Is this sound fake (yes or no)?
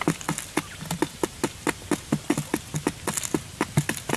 no